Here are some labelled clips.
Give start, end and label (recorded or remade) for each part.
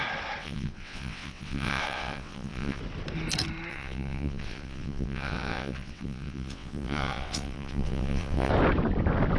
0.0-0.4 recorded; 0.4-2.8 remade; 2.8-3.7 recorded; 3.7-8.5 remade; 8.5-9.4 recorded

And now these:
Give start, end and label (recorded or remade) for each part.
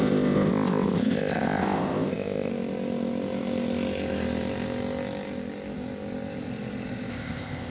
0.0-2.5 remade; 2.5-7.1 recorded; 7.1-7.7 remade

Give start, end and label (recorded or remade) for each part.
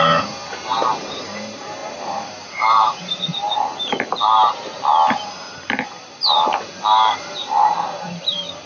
0.0-8.7 remade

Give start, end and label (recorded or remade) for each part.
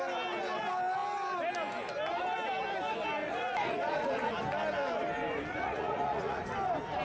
0.0-3.2 recorded; 3.2-4.3 remade; 4.3-5.5 recorded; 5.5-6.4 remade; 6.4-7.0 recorded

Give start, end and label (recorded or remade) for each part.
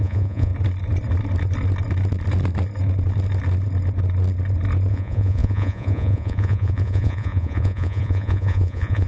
0.0-0.5 remade; 0.5-4.9 recorded; 4.9-9.1 remade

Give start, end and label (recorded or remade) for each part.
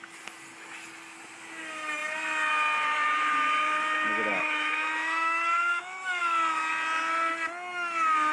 0.0-4.3 recorded; 4.3-6.2 remade; 6.2-8.3 recorded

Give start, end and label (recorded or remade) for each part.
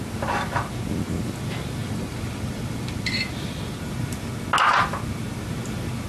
0.0-1.8 recorded; 1.8-3.8 remade; 3.8-6.1 recorded